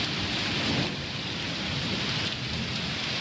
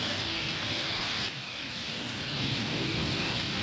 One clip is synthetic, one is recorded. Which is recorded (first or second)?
first